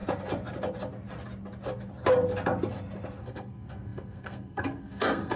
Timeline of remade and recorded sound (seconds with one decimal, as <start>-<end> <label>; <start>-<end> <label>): 0.0-3.2 recorded; 3.2-5.4 remade